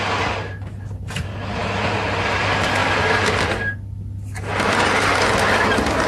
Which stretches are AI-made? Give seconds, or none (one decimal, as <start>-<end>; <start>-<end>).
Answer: none